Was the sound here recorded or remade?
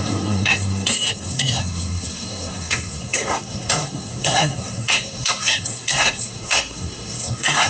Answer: remade